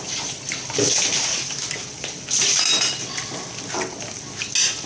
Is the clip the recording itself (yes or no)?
yes